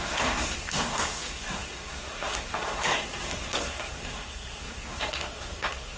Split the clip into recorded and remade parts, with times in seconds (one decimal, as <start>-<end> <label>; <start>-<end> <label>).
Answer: 0.0-6.0 remade